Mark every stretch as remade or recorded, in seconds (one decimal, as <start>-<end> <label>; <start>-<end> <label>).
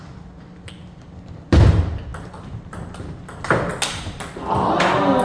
0.0-5.2 recorded